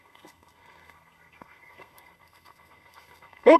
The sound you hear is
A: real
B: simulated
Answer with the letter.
B